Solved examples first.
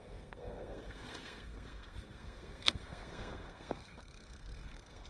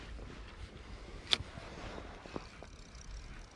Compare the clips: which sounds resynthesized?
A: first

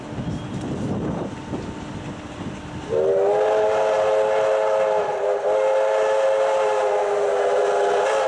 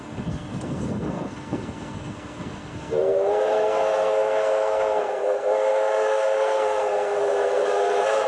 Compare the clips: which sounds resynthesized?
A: second